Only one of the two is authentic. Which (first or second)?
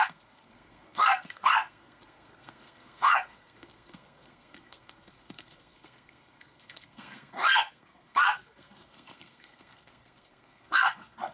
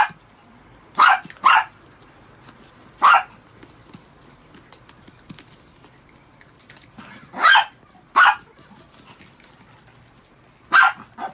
second